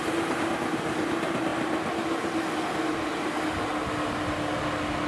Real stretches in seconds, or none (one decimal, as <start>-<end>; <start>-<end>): 0.0-5.1